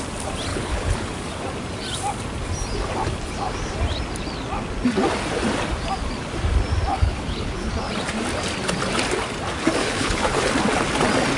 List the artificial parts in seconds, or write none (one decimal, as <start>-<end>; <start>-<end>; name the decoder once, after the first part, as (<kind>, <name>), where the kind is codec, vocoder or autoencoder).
0.5-1.1 (codec, HILCodec); 6.9-7.7; 9.8-10.5